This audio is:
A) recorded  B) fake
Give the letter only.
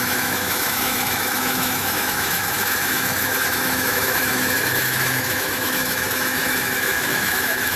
B